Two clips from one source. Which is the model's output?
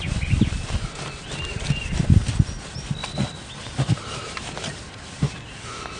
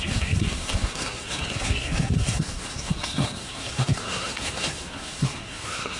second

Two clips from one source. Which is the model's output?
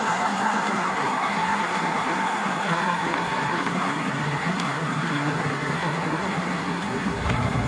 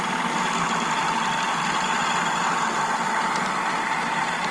first